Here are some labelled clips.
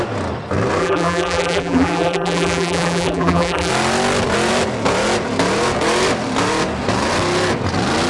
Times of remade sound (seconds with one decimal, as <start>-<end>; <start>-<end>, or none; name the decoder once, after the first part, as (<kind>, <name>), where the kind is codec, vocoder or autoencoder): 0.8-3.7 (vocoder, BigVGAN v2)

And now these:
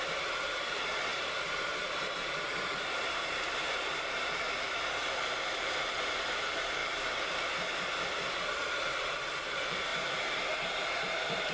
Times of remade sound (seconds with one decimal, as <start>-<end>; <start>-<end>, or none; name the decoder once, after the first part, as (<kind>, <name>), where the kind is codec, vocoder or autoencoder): 0.0-6.8 (vocoder, BigVGAN v2); 8.4-11.5

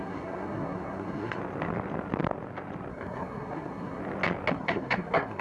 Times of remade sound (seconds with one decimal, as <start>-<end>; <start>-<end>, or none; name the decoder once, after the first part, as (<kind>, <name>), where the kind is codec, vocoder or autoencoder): 0.0-1.4 (codec, SNAC); 2.9-4.0; 4.5-5.4

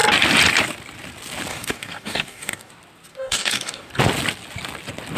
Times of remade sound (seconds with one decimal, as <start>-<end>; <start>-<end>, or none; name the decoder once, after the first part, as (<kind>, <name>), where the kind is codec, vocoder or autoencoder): 1.5-2.7 (codec, DAC); 3.1-3.9